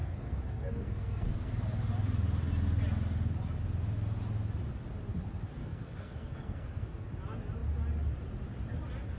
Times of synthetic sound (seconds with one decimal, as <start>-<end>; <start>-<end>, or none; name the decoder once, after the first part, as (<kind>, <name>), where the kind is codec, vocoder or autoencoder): 0.0-1.5 (codec, SNAC); 5.6-7.1